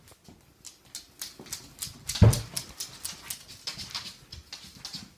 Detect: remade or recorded recorded